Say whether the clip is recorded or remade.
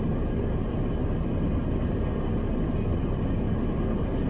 recorded